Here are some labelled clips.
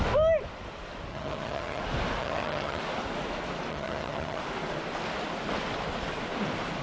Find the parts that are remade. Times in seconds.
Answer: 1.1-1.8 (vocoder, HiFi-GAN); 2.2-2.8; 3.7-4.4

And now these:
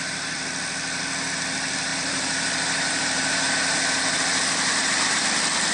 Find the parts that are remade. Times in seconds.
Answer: 1.9-5.2 (vocoder, BigVGAN v2)

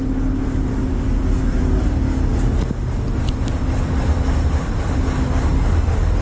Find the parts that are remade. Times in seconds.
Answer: none

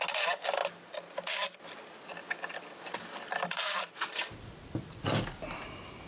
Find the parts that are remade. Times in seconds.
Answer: none

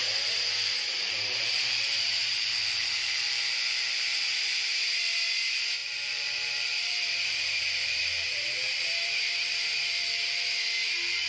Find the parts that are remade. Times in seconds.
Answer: 0.0-2.4 (vocoder, BigVGAN v2); 5.8-10.6

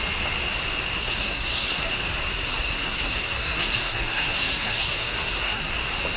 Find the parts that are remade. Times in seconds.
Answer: 1.0-1.9 (codec, SNAC); 2.3-5.7

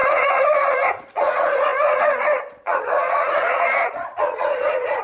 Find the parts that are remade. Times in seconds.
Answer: 0.0-5.0 (vocoder, Vocos)

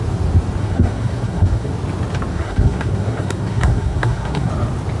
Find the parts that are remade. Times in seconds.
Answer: 0.6-1.7 (codec, SNAC); 2.3-4.5